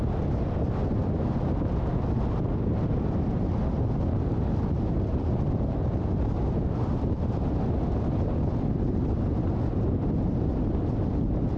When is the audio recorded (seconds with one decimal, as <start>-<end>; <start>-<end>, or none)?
0.0-5.1; 5.6-10.5